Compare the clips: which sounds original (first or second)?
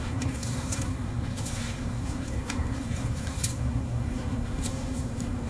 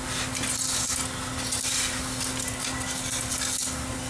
second